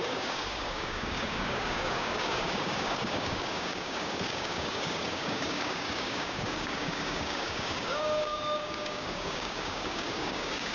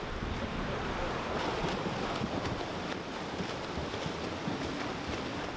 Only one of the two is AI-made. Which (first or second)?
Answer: first